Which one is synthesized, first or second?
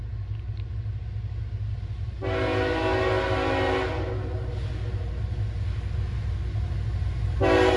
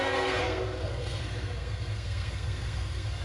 second